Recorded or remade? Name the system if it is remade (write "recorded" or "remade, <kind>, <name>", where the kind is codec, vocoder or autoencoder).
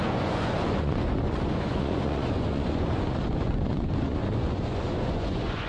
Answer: remade, vocoder, Vocos